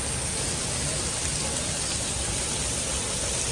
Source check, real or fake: real